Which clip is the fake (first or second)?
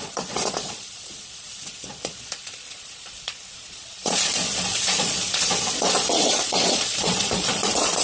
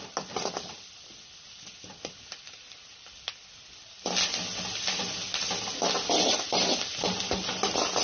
first